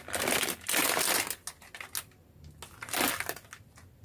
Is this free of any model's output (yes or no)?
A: yes